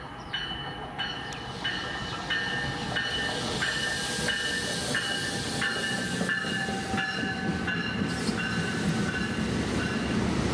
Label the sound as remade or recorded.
recorded